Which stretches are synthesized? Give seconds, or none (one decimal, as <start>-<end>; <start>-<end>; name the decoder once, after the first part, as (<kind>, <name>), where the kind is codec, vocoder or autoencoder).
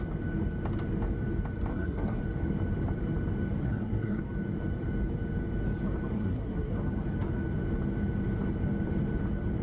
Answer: 1.7-2.2 (codec, SNAC); 3.6-4.2; 6.1-6.8